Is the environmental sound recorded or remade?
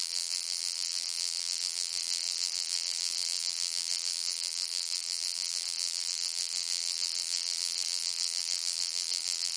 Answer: remade